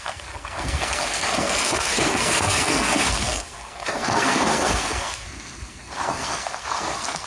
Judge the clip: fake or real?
fake